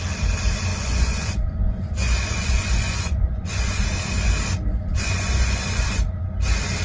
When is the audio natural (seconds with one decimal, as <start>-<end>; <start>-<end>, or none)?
0.0-0.7; 3.8-4.7; 5.9-6.8